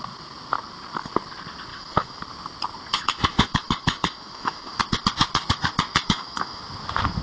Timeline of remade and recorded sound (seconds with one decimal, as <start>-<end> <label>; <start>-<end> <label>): 0.0-1.7 recorded; 1.7-2.2 remade; 2.2-2.9 recorded; 2.9-4.8 remade; 4.8-5.9 recorded; 5.9-6.6 remade; 6.6-7.2 recorded